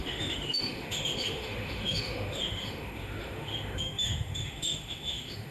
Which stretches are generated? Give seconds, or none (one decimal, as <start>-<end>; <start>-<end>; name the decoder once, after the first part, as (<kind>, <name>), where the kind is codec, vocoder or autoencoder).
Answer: 0.0-5.5 (autoencoder, DAC-VAE)